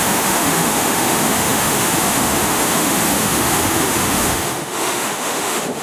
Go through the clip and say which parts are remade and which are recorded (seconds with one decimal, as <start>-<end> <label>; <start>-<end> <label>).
0.0-5.8 remade